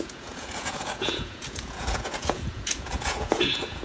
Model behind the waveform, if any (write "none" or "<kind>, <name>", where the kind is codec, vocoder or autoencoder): vocoder, Vocos